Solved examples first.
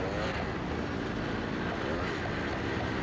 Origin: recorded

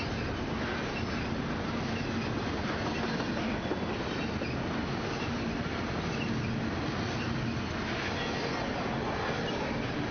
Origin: recorded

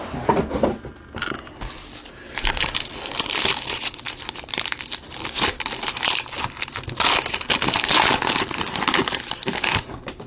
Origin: recorded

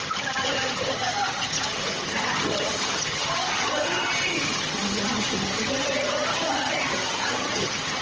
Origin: remade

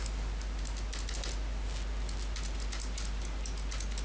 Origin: recorded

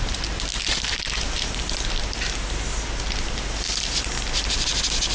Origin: recorded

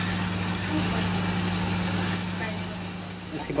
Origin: recorded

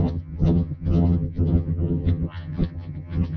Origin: remade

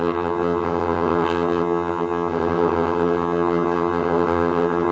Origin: remade